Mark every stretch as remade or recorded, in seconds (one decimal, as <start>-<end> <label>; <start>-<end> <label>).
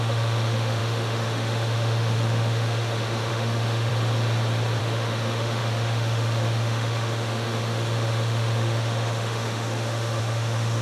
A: 0.0-3.9 remade; 3.9-4.8 recorded; 4.8-10.8 remade